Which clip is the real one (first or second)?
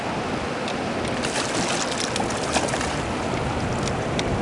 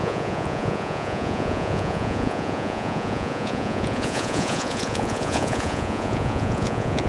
first